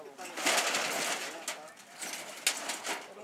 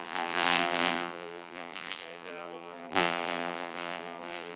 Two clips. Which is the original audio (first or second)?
first